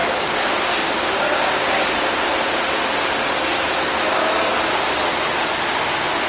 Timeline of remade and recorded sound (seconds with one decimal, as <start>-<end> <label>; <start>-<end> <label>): 0.0-2.0 remade; 2.0-6.3 recorded